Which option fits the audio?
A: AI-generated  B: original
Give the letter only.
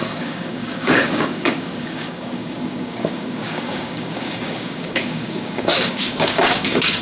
A